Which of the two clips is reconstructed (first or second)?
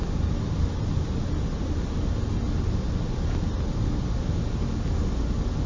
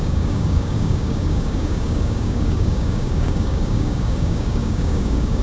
second